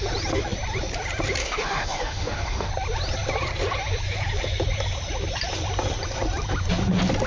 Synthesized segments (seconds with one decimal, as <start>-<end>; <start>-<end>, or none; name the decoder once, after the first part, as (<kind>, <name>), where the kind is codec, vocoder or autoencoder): 1.4-2.7 (autoencoder, DAC-VAE)